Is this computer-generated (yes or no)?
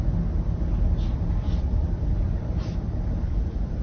no